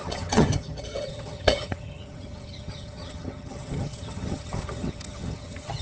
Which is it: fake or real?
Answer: fake